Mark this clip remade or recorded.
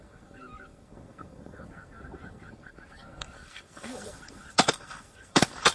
remade